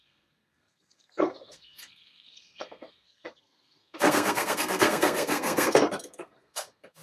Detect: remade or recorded remade